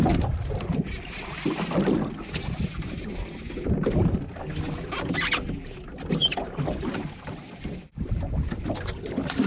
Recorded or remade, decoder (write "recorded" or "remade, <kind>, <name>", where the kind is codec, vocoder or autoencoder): recorded